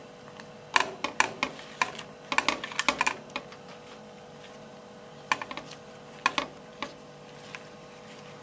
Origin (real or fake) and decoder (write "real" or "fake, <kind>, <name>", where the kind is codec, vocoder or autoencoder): real